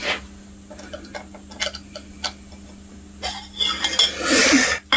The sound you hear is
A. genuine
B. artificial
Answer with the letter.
A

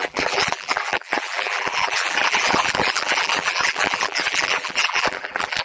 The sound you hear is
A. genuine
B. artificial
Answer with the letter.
B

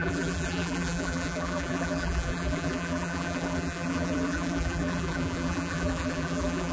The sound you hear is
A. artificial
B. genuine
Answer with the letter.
A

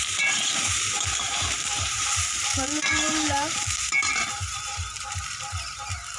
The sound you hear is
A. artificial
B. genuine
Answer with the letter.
A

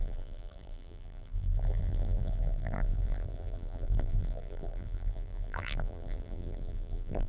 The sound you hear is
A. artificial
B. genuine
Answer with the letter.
A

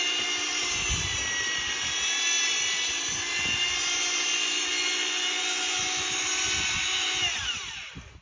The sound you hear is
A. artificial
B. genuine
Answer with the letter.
B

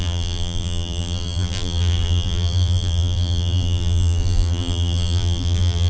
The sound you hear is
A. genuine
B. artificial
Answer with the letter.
B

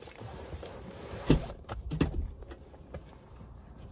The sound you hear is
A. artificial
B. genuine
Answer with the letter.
A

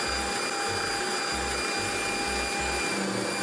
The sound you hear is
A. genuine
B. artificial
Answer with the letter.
A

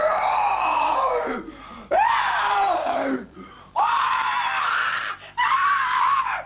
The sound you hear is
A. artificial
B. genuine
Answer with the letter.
A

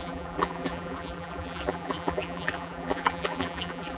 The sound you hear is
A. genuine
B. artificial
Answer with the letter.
B